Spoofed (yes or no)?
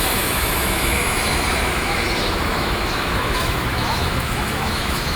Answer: yes